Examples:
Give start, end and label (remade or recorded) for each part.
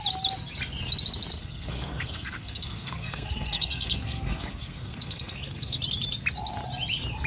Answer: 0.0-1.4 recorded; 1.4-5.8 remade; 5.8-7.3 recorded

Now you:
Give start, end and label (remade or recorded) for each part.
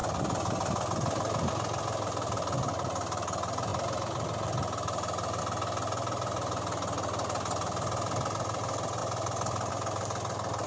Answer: 0.0-10.7 recorded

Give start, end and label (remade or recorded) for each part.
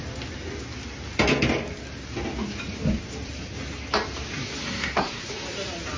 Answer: 0.0-4.6 recorded; 4.6-5.2 remade; 5.2-6.0 recorded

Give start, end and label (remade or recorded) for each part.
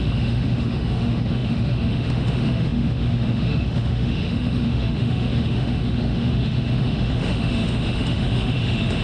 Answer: 0.0-9.0 remade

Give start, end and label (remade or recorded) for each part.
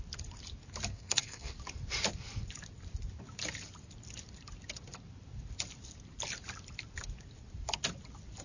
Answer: 0.0-0.9 recorded; 0.9-1.5 remade; 1.5-8.4 recorded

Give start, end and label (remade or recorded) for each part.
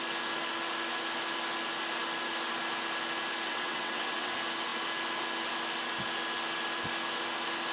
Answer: 0.0-3.5 recorded; 3.5-4.3 remade; 4.3-7.7 recorded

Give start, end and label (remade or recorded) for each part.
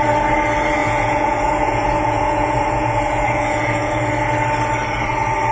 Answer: 0.0-0.8 recorded; 0.8-4.1 remade; 4.1-5.5 recorded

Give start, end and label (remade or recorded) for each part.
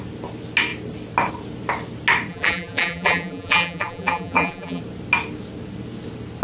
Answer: 0.0-2.3 recorded; 2.3-4.8 remade; 4.8-6.4 recorded